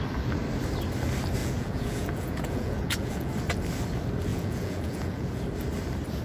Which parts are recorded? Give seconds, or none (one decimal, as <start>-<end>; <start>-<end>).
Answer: 0.0-1.4; 3.3-4.3; 5.4-6.2